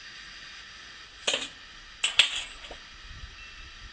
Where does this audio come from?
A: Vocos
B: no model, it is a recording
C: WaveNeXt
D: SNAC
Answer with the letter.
B